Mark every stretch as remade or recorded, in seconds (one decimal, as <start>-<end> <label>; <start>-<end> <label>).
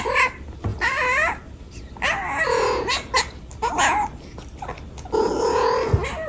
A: 0.0-6.3 recorded